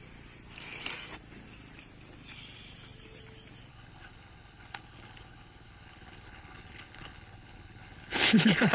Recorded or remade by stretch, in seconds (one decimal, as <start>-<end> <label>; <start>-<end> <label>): 0.0-3.7 recorded; 3.7-8.7 remade